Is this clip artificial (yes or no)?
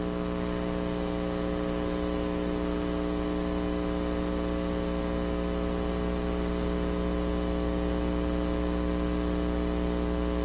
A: no